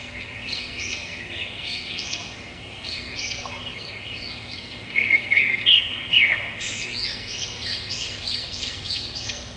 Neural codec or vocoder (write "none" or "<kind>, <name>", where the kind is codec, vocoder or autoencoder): codec, SNAC